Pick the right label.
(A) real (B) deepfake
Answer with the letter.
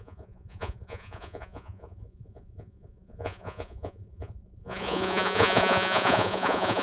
B